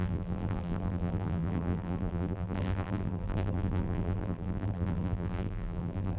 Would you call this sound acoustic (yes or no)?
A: no